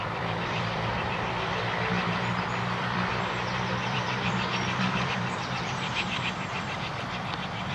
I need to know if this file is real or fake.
fake